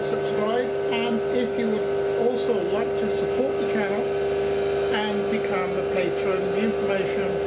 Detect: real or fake real